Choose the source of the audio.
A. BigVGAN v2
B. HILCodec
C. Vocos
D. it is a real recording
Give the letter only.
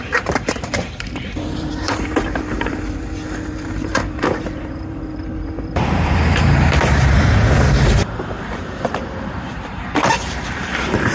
A